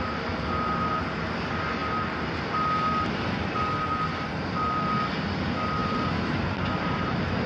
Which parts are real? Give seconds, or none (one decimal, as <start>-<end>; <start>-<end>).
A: 0.0-5.8